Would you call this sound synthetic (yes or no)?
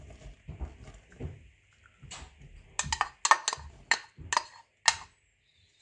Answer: no